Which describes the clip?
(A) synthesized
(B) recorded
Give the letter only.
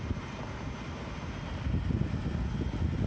B